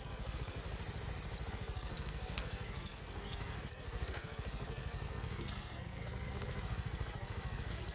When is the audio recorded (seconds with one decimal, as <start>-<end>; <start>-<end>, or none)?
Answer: 0.6-1.5